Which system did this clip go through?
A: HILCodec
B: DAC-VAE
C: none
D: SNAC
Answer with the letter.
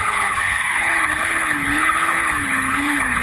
A